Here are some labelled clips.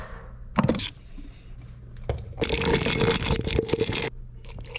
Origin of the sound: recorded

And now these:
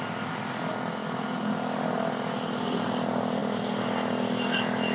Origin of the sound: recorded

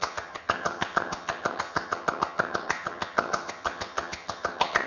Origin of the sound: remade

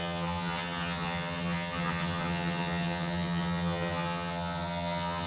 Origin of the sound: remade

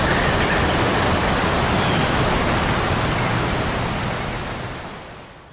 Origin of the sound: recorded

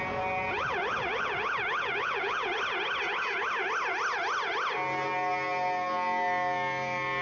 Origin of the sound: recorded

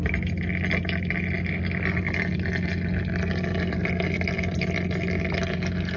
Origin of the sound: recorded